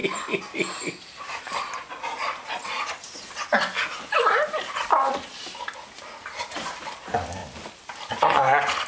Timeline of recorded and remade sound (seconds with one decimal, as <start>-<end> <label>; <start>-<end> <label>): 0.0-1.4 remade; 1.4-7.4 recorded; 7.4-7.9 remade; 7.9-8.9 recorded

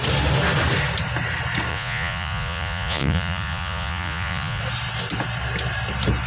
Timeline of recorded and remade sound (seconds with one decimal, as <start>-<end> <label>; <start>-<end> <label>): 0.0-1.7 recorded; 1.7-4.6 remade; 4.6-6.3 recorded